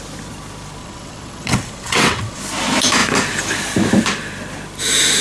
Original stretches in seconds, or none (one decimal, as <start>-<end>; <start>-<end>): 0.0-0.8; 2.4-5.2